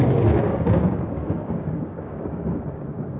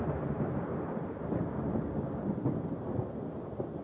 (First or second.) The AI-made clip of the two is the first